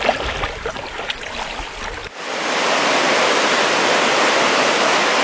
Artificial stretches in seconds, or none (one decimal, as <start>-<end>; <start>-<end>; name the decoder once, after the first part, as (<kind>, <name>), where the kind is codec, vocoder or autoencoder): none